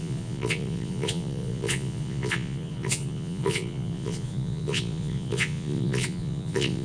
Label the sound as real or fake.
fake